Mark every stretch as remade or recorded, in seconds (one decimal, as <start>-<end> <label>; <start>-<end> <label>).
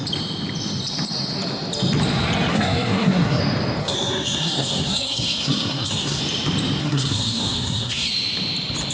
0.0-2.5 recorded; 2.5-3.4 remade; 3.4-3.8 recorded; 3.8-6.2 remade; 6.2-6.8 recorded; 6.8-8.1 remade; 8.1-8.9 recorded